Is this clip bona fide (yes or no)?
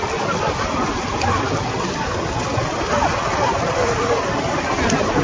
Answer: yes